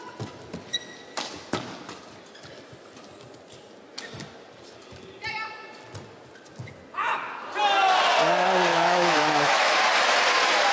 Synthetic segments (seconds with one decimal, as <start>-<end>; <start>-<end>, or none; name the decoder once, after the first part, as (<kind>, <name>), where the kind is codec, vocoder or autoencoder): 8.7-9.7 (autoencoder, DAC-VAE)